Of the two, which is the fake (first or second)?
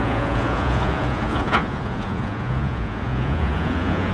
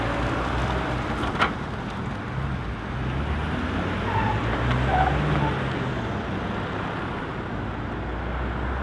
first